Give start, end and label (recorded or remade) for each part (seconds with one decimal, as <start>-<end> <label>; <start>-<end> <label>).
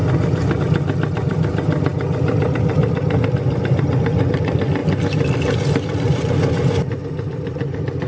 0.0-8.1 recorded